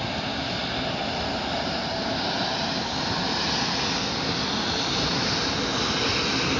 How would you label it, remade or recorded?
recorded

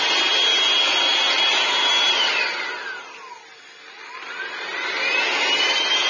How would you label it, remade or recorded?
recorded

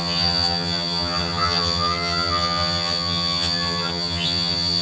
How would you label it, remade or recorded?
remade